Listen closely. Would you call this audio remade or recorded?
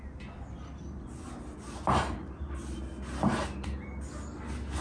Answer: recorded